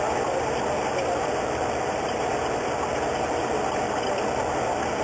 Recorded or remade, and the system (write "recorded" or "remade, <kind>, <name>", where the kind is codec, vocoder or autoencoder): recorded